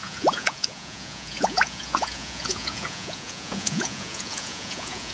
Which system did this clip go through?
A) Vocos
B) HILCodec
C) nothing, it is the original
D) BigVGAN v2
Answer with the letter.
A